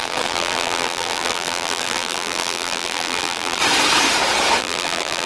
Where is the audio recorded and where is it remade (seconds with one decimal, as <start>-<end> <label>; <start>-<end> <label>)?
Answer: 0.0-3.6 remade; 3.6-4.6 recorded; 4.6-5.3 remade